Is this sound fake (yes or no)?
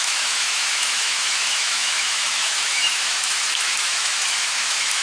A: yes